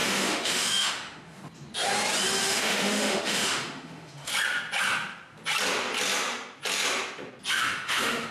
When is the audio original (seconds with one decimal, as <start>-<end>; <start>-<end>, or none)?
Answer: 1.4-2.4; 4.3-7.5